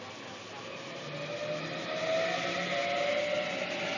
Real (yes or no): yes